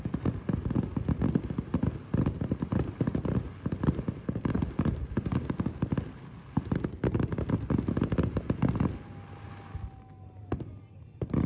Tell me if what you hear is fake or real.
real